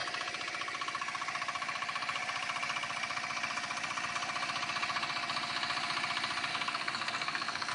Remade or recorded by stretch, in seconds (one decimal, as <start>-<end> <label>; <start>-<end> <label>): 0.0-6.5 recorded; 6.5-7.7 remade